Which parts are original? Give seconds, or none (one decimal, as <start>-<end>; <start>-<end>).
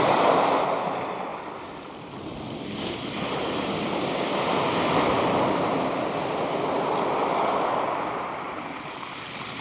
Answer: 0.0-9.6